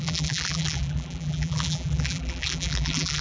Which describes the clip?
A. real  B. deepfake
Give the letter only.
B